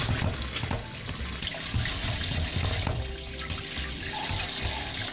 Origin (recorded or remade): recorded